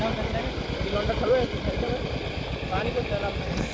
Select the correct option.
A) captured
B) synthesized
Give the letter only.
A